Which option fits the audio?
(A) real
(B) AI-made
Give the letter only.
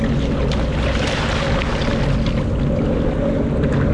A